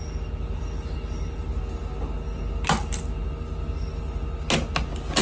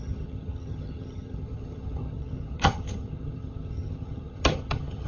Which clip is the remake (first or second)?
second